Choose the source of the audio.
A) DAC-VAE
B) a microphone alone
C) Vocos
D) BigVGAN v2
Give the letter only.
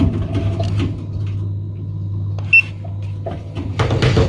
B